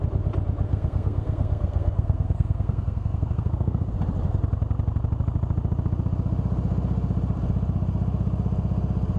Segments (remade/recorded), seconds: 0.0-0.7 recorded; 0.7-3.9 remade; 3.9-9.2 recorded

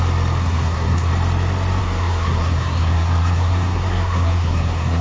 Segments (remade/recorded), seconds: 0.0-0.4 recorded; 0.4-1.1 remade; 1.1-1.8 recorded; 1.8-5.0 remade

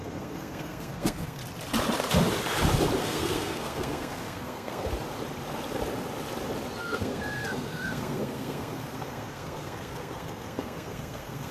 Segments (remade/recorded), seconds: 0.0-1.4 remade; 1.4-3.0 recorded; 3.0-4.9 remade; 4.9-6.8 recorded; 6.8-11.5 remade

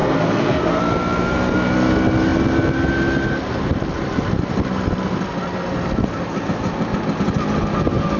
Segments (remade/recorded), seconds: 0.0-0.8 remade; 0.8-8.2 recorded